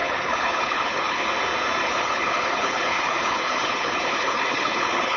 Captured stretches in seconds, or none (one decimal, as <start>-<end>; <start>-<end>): 1.3-1.8